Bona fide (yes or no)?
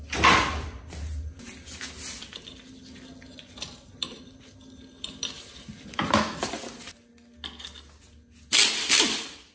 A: yes